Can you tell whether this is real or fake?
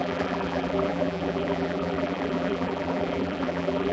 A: fake